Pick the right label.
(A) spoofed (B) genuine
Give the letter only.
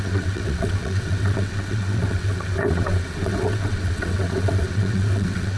A